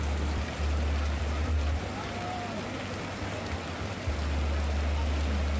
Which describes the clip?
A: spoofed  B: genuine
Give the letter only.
B